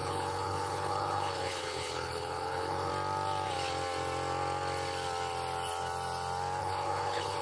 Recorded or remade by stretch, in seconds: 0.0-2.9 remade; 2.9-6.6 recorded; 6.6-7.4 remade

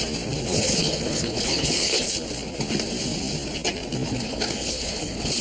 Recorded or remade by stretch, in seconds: 0.0-0.5 recorded; 0.5-2.1 remade; 2.1-4.1 recorded; 4.1-5.4 remade

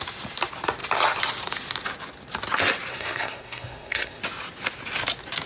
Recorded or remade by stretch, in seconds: 0.0-2.9 recorded; 2.9-4.2 remade; 4.2-5.5 recorded

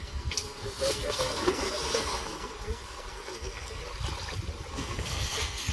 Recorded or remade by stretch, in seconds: 0.0-3.8 remade; 3.8-4.7 recorded; 4.7-5.7 remade

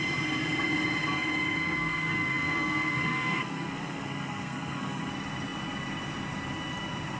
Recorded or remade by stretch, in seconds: 0.0-1.6 recorded; 1.6-5.1 remade; 5.1-7.2 recorded

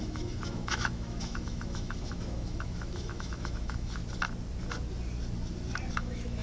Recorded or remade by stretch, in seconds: 0.0-4.0 remade; 4.0-5.9 recorded; 5.9-6.4 remade

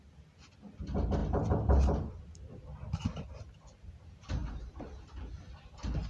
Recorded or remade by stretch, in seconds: 0.0-6.1 recorded